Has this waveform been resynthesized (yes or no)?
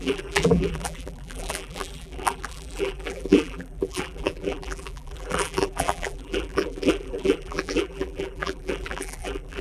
yes